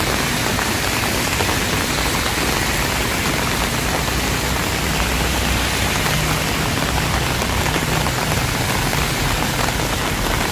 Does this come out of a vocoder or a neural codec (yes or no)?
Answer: no